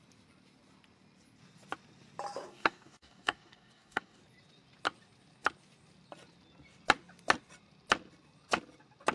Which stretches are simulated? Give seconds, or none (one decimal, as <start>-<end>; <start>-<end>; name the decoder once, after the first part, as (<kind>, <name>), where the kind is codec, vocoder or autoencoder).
2.5-4.2 (codec, DAC)